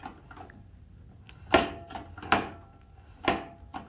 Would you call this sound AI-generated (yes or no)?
no